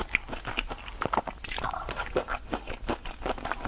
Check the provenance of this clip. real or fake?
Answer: real